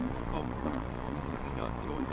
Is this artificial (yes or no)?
yes